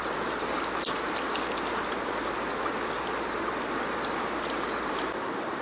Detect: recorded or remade recorded